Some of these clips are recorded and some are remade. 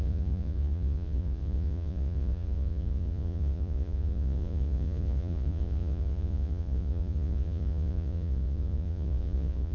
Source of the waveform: remade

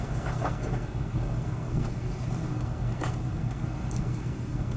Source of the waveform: remade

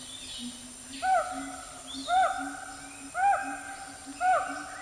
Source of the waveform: recorded